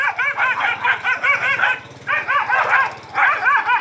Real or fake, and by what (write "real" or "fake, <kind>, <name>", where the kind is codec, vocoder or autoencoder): real